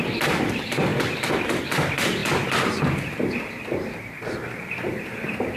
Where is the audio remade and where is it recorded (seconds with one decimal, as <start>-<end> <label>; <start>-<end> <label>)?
0.0-0.9 remade; 0.9-1.6 recorded; 1.6-2.2 remade; 2.2-3.5 recorded; 3.5-5.6 remade